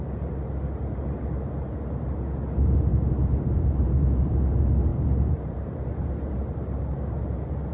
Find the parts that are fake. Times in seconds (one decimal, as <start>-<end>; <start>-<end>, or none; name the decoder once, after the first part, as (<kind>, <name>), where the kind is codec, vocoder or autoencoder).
2.9-4.3 (vocoder, BigVGAN v2); 4.9-7.0